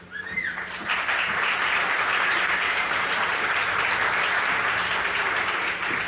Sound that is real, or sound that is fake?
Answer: fake